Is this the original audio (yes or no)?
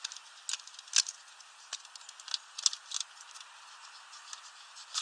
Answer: yes